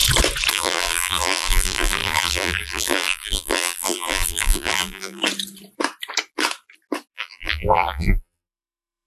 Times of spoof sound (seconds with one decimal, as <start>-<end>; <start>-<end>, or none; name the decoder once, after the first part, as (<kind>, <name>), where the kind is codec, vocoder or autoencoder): 0.5-5.2 (vocoder, BigVGAN v2); 7.1-9.1